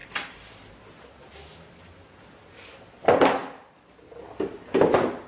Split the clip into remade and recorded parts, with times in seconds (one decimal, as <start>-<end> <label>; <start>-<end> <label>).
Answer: 0.0-0.7 remade; 0.7-5.3 recorded